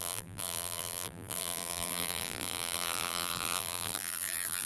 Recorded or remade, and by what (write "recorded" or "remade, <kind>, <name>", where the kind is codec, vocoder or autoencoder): remade, vocoder, BigVGAN v2